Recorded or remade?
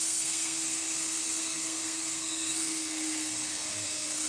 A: remade